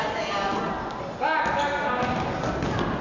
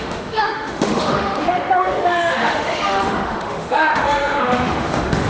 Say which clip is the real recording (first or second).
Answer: first